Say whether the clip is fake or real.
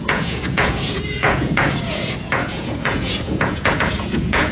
fake